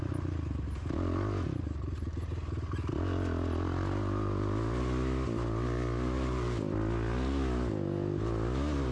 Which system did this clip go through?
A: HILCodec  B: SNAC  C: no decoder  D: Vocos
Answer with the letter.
C